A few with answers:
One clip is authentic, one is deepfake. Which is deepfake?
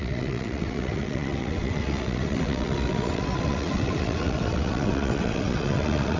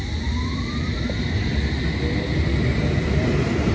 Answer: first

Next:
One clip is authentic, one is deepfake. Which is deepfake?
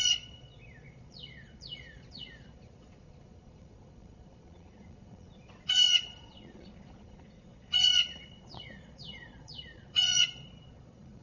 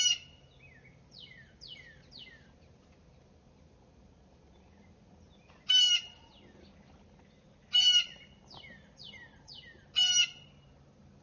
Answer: first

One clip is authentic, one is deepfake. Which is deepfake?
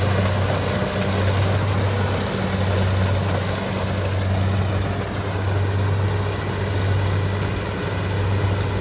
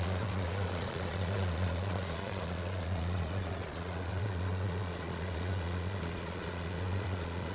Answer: second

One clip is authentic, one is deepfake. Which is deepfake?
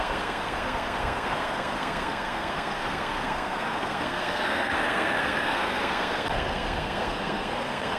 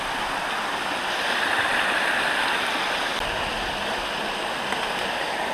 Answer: first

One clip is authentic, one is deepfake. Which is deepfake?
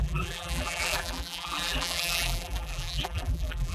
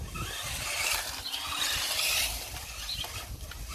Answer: first